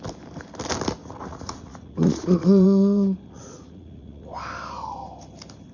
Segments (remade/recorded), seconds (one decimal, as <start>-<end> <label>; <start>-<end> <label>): 0.0-1.0 recorded; 1.0-4.4 remade; 4.4-5.7 recorded